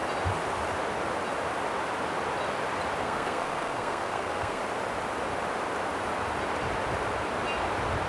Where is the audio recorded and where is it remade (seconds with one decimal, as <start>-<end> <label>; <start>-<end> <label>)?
0.0-3.0 recorded; 3.0-4.6 remade; 4.6-8.1 recorded